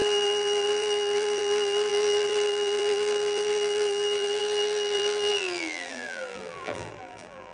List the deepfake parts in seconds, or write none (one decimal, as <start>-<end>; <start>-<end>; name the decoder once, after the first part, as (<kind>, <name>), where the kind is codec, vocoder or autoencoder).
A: 0.0-7.5 (vocoder, BigVGAN v2)